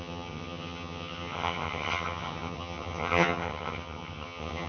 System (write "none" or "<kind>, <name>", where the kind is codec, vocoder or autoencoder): vocoder, HiFi-GAN